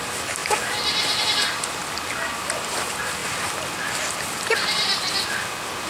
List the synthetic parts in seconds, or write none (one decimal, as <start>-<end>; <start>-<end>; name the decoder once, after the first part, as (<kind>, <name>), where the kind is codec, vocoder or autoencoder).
none